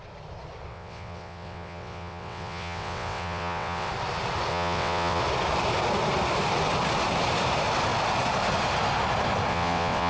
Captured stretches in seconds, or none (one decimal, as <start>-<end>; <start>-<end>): 0.0-0.7; 3.9-4.5; 5.2-9.5